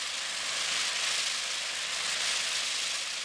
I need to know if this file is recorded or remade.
recorded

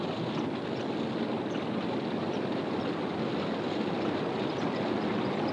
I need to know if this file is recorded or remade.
recorded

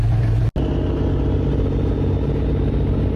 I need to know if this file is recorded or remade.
recorded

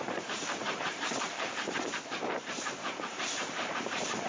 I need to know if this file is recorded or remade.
remade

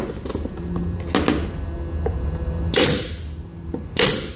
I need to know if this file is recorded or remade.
recorded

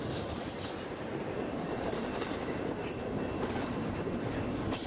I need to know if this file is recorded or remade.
remade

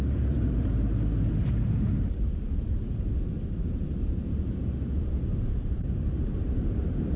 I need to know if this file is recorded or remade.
remade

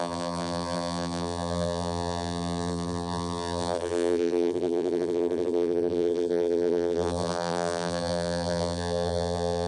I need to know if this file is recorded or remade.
remade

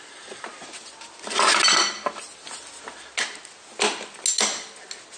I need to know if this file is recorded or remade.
recorded